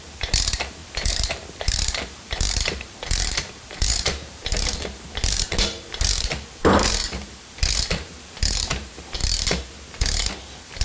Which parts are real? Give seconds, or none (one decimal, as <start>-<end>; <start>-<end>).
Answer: 0.8-1.6; 9.2-10.3